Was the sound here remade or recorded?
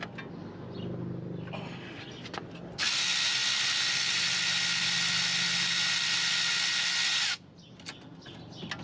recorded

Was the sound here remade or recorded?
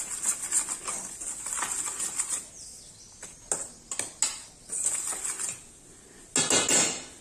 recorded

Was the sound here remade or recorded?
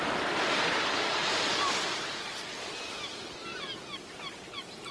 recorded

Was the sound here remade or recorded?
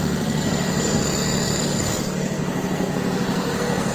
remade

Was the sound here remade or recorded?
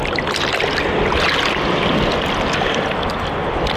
recorded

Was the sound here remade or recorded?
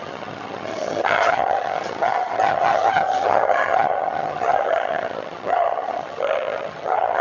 remade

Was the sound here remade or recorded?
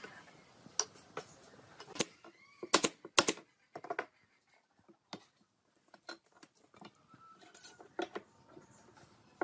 recorded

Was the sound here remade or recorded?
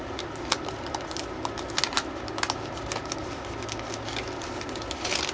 recorded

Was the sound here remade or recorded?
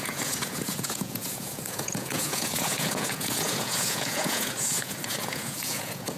remade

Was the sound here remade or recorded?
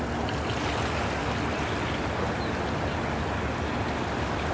recorded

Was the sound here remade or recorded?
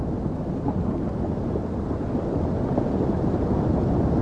recorded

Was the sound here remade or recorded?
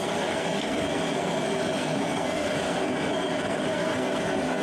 remade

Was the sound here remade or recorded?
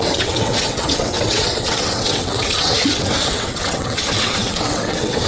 remade